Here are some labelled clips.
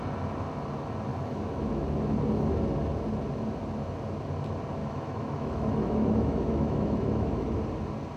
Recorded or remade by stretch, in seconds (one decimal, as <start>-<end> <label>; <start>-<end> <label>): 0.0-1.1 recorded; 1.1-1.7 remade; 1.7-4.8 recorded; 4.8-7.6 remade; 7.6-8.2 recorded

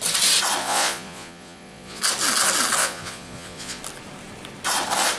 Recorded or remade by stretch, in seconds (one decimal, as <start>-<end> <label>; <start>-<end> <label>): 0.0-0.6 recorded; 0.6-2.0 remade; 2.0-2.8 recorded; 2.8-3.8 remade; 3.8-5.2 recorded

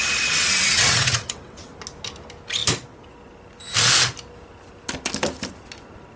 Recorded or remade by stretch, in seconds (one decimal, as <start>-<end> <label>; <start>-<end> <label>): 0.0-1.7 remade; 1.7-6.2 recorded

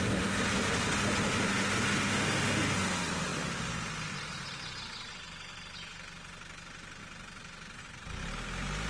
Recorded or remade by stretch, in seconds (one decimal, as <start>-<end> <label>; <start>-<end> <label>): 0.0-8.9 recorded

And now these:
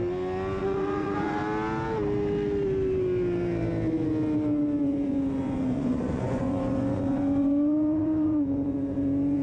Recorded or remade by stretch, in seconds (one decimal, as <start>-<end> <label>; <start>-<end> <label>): 0.0-0.6 recorded; 0.6-1.4 remade; 1.4-4.8 recorded; 4.8-9.4 remade